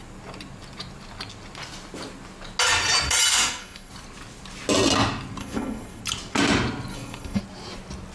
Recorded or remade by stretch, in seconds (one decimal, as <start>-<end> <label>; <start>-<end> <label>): 0.0-3.3 recorded; 3.3-3.9 remade; 3.9-5.4 recorded; 5.4-6.0 remade; 6.0-6.9 recorded; 6.9-7.4 remade; 7.4-8.1 recorded